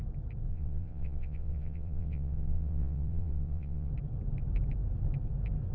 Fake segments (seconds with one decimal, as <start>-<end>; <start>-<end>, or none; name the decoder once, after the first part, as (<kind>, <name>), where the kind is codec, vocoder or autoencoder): 0.5-3.9 (vocoder, WaveNeXt)